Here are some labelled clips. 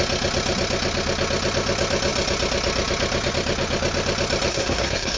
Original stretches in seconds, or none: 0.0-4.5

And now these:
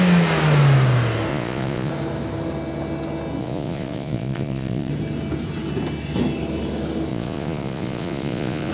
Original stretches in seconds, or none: 0.0-1.3; 1.9-3.4; 4.9-7.1

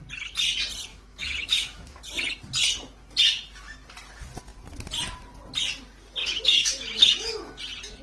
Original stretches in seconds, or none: 0.0-0.9; 2.0-6.2; 7.6-8.0

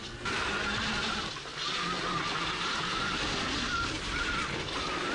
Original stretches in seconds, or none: 0.0-5.1

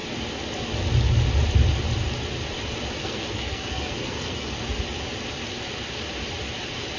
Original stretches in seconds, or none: 0.0-3.0; 4.6-7.0